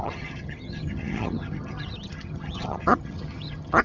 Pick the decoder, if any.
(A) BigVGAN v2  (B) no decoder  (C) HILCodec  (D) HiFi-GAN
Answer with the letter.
D